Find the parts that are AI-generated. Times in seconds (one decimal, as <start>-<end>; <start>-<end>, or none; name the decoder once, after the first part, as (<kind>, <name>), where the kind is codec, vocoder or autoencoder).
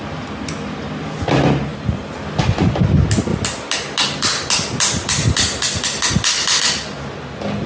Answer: none